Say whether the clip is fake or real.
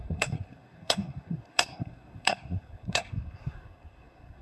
fake